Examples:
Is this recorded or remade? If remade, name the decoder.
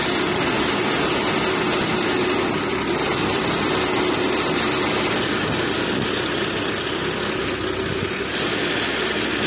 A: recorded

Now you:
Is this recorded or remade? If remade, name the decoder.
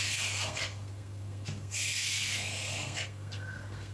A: remade, codec, SNAC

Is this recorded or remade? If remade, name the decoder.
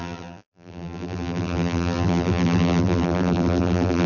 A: remade, vocoder, BigVGAN v2